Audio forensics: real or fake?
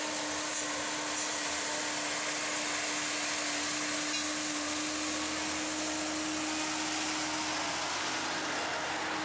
real